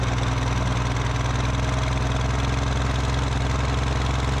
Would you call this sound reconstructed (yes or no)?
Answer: no